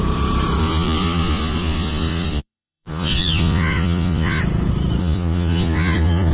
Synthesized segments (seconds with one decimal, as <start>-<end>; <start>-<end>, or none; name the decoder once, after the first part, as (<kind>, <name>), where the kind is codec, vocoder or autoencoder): 0.6-4.4 (vocoder, Vocos); 5.0-6.3